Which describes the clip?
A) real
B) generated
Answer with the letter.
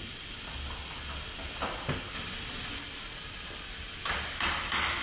A